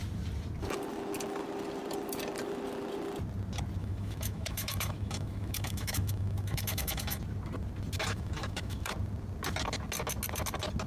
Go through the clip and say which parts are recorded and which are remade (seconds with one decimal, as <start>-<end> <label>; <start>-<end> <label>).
0.0-3.8 recorded; 3.8-7.2 remade; 7.2-8.0 recorded; 8.0-8.9 remade; 8.9-10.9 recorded